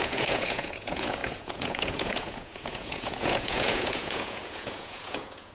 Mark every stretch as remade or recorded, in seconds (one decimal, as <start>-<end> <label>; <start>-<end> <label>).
0.0-5.5 remade